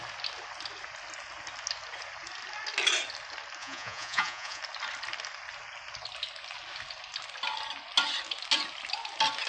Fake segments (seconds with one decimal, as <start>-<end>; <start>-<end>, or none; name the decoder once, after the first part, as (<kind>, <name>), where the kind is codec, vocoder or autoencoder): 3.6-4.6 (vocoder, Vocos)